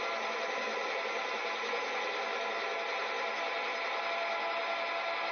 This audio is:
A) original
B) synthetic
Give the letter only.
A